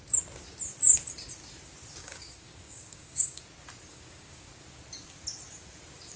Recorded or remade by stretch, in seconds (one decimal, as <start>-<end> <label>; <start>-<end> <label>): 0.0-2.0 recorded; 2.0-3.4 remade; 3.4-3.9 recorded; 3.9-4.5 remade; 4.5-6.2 recorded